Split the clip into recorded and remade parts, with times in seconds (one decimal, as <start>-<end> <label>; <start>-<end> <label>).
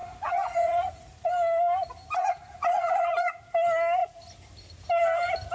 0.0-1.3 remade; 1.3-2.2 recorded; 2.2-3.4 remade; 3.4-5.5 recorded